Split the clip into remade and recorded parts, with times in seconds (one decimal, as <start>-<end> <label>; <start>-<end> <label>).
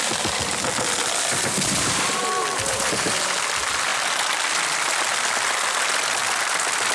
0.0-6.9 recorded